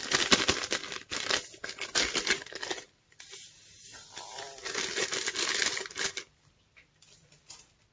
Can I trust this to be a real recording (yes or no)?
yes